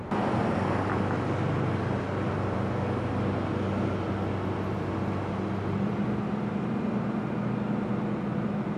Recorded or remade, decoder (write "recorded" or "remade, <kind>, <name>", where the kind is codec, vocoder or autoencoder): recorded